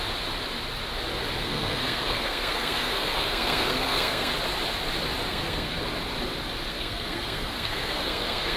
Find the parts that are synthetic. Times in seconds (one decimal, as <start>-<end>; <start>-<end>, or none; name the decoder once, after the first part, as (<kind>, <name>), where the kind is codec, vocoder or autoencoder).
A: 1.4-4.3 (codec, SNAC); 5.3-5.8; 6.7-8.6